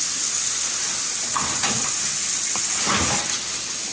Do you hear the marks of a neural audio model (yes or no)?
no